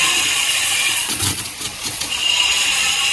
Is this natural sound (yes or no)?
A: no